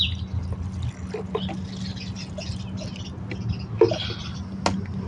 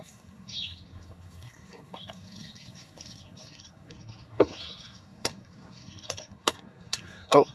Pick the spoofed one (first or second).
second